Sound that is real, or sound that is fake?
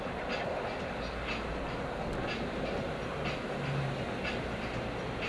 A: real